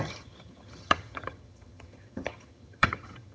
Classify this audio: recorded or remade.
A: remade